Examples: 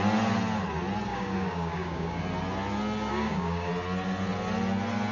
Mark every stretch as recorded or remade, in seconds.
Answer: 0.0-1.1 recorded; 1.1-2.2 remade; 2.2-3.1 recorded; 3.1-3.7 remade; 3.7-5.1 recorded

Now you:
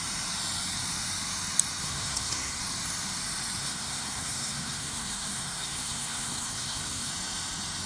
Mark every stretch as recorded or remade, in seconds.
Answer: 0.0-1.8 recorded; 1.8-2.6 remade; 2.6-3.6 recorded; 3.6-7.1 remade; 7.1-7.9 recorded